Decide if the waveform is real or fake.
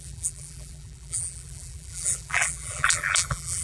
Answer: fake